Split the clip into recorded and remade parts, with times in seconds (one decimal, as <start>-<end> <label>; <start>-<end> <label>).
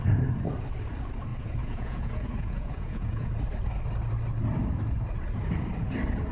0.0-1.3 recorded; 1.3-3.3 remade; 3.3-6.3 recorded